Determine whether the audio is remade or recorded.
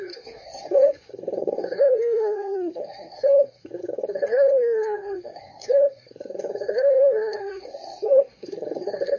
remade